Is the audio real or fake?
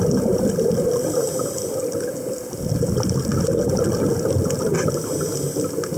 real